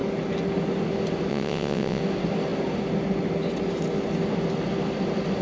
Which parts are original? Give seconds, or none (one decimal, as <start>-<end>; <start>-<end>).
0.0-1.3; 2.0-5.4